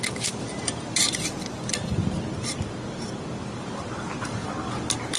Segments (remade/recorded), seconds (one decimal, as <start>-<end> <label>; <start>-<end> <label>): 0.0-5.2 remade